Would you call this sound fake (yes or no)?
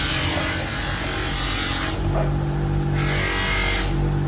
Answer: no